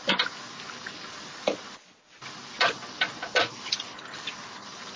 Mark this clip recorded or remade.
recorded